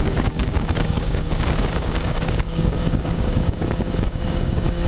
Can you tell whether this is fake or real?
fake